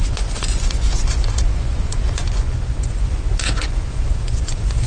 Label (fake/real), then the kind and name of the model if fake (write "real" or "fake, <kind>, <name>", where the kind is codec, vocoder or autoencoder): fake, vocoder, Vocos